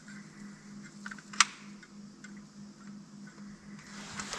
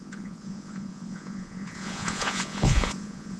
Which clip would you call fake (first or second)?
second